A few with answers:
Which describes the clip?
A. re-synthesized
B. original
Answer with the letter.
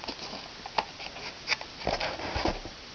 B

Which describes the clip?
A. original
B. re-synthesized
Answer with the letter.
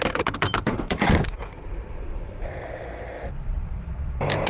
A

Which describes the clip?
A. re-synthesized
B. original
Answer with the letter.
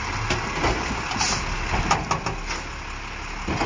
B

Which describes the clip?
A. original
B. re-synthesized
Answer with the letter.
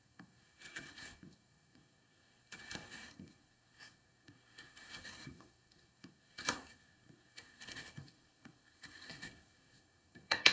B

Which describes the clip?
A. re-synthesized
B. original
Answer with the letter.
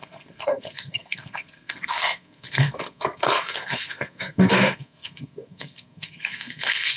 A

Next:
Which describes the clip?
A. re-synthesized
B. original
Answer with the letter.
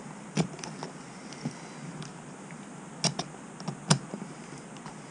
B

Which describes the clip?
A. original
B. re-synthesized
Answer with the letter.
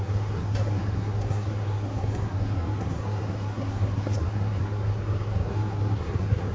B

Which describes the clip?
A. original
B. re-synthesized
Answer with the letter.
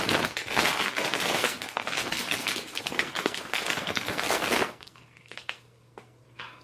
B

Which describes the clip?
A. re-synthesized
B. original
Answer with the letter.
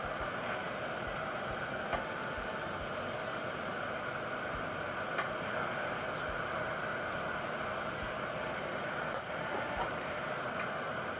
B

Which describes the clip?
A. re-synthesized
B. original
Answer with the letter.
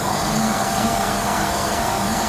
A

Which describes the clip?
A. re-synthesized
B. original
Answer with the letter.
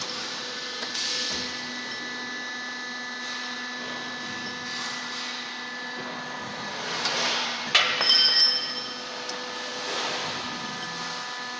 B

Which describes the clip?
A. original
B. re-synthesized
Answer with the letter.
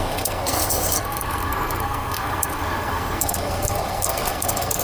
B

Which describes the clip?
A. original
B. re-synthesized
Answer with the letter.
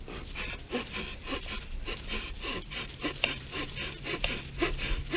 A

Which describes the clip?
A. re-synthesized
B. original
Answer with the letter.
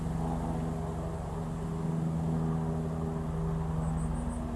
B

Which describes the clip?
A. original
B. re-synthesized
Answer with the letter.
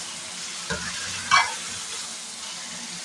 A